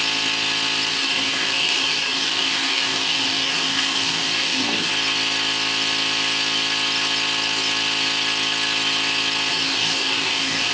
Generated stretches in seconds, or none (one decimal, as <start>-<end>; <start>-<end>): 0.9-4.9; 9.5-10.7